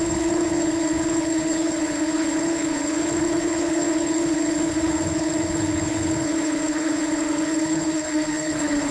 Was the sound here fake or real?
fake